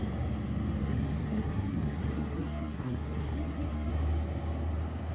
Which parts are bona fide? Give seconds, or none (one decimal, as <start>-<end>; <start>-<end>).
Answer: 0.0-0.8; 3.9-5.1

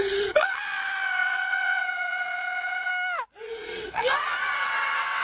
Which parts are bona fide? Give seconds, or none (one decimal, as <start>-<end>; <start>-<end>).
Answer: 2.9-3.4

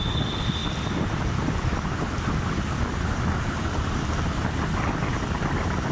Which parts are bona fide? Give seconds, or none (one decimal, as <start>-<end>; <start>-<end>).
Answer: 0.0-5.9

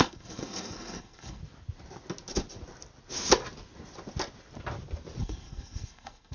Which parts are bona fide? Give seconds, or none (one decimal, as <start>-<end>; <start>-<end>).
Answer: 1.4-5.2

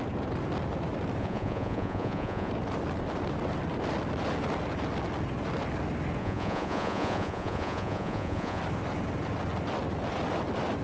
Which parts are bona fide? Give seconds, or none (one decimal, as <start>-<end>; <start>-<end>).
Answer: 0.0-1.2; 2.5-6.2; 8.6-10.8